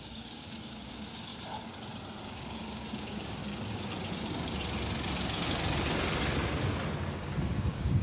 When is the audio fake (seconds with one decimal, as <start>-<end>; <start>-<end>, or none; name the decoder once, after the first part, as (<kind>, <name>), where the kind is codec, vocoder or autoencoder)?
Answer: 0.0-1.3 (codec, DAC); 2.2-3.4; 7.1-8.0

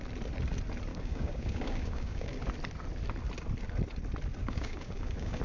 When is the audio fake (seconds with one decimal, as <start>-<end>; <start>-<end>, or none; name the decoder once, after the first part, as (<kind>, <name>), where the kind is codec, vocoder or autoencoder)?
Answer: 0.9-2.5 (codec, DAC); 4.4-5.4